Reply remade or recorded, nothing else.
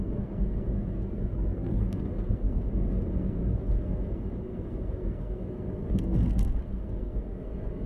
remade